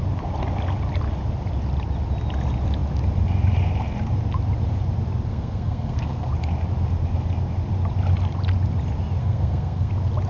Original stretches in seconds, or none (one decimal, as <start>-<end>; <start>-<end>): 0.0-5.3; 6.3-9.2; 9.9-10.3